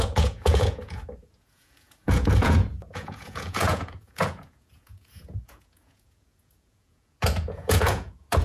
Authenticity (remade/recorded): remade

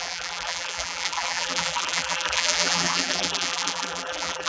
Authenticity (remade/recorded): remade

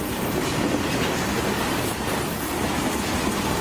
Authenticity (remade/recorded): recorded